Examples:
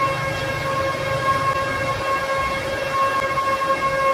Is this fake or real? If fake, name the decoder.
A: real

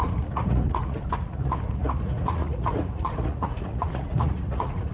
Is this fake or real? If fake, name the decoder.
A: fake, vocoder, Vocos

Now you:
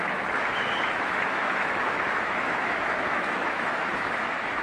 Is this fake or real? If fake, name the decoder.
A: fake, autoencoder, DAC-VAE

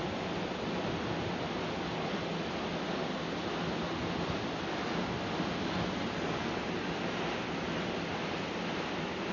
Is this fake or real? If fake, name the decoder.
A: real